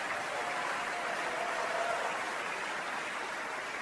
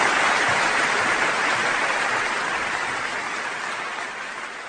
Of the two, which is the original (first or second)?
second